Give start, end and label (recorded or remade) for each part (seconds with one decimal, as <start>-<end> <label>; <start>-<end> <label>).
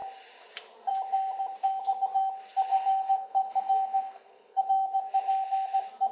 0.0-2.7 recorded; 2.7-4.6 remade; 4.6-6.1 recorded